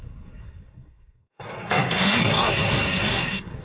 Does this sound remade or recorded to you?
remade